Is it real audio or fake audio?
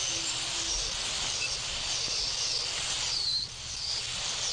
real